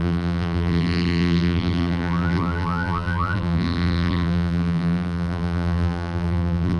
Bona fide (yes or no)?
no